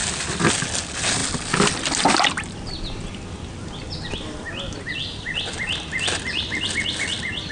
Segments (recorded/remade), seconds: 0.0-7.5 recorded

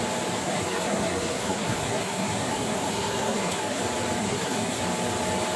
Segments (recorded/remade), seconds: 0.0-0.4 recorded; 0.4-3.8 remade; 3.8-4.2 recorded; 4.2-4.8 remade; 4.8-5.6 recorded

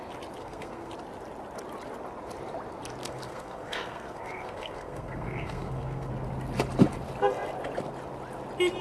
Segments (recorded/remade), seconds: 0.0-0.4 recorded; 0.4-0.9 remade; 0.9-3.0 recorded; 3.0-6.1 remade; 6.1-8.8 recorded

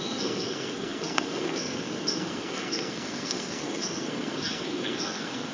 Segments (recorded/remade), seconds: 0.0-5.5 remade